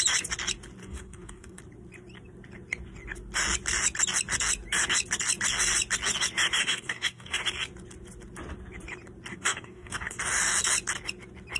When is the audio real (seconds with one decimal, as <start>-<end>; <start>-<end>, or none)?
0.0-0.8; 1.6-6.6; 7.4-9.3; 10.2-11.6